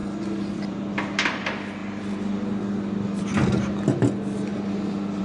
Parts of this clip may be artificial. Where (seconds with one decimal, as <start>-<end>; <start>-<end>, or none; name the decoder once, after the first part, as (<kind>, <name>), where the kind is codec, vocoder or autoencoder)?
none